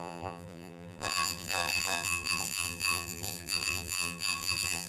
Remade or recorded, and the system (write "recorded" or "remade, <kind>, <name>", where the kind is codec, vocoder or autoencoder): remade, vocoder, BigVGAN v2